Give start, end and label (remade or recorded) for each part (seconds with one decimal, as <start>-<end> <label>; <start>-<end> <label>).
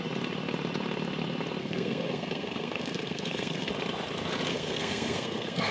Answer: 0.0-1.6 recorded; 1.6-3.7 remade; 3.7-4.5 recorded; 4.5-5.7 remade